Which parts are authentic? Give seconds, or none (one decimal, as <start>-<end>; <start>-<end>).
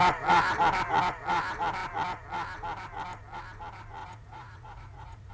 0.0-4.0